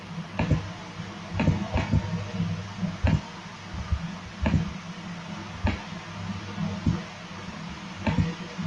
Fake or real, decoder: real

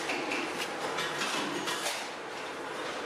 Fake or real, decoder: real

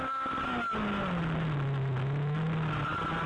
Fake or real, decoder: real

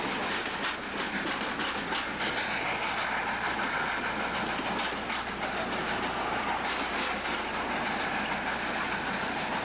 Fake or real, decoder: real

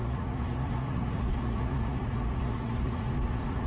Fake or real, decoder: fake, vocoder, Vocos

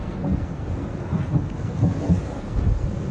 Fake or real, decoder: fake, codec, SNAC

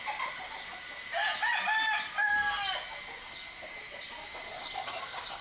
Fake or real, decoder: real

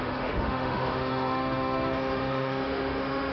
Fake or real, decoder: fake, autoencoder, DAC-VAE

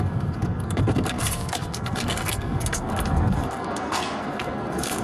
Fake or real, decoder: fake, codec, SNAC